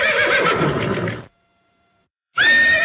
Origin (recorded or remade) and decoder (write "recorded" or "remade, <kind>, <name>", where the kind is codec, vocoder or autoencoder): remade, vocoder, BigVGAN v2